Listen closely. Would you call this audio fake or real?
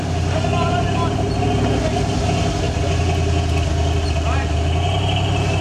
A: real